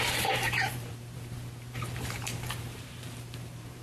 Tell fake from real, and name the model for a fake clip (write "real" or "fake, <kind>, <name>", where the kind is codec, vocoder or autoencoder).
fake, vocoder, BigVGAN v2